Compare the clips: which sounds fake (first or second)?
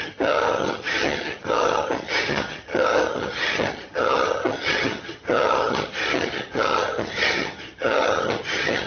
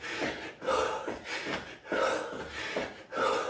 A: first